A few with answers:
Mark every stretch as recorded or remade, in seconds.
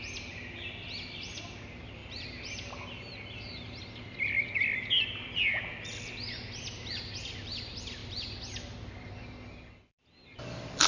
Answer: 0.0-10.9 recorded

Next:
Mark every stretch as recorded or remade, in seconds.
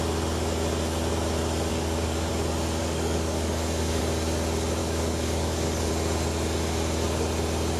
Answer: 0.0-1.7 recorded; 1.7-2.3 remade; 2.3-2.8 recorded; 2.8-4.0 remade; 4.0-4.8 recorded; 4.8-5.9 remade; 5.9-7.8 recorded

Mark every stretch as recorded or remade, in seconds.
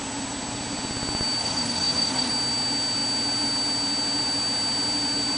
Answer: 0.0-1.4 recorded; 1.4-2.3 remade; 2.3-5.4 recorded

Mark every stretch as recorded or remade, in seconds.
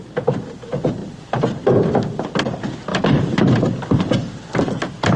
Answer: 0.0-5.2 recorded